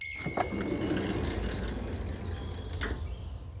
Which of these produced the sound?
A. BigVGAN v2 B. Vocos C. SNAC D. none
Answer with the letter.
D